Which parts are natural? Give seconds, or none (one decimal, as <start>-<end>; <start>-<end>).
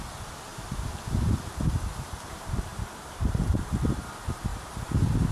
0.0-0.5; 1.0-2.7; 3.6-4.5